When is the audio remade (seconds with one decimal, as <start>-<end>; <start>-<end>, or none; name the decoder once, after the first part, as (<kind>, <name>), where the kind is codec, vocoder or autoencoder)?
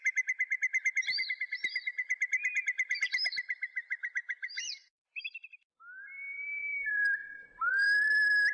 0.0-8.5 (vocoder, BigVGAN v2)